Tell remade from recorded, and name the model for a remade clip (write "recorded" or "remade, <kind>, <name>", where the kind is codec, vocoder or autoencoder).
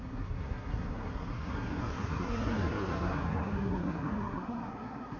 remade, codec, SNAC